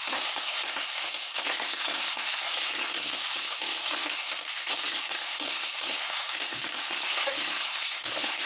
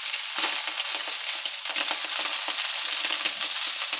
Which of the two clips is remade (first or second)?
first